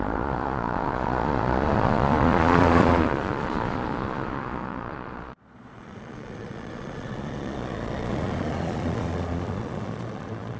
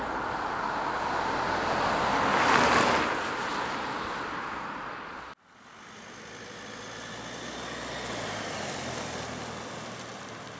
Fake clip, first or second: first